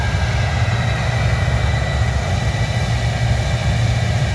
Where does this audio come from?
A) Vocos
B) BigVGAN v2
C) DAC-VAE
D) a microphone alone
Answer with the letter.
D